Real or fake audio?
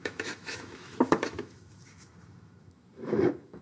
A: fake